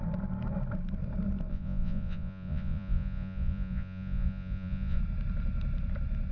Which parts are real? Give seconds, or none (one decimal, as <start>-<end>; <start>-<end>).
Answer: 0.0-1.5; 5.0-6.3